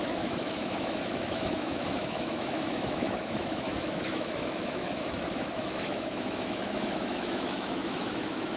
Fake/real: fake